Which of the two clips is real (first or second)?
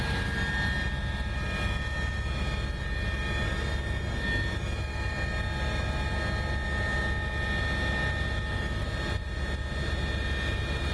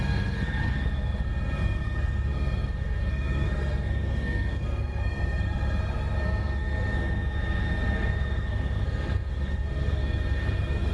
first